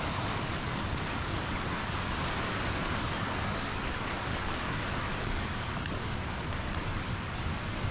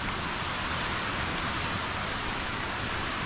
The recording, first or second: second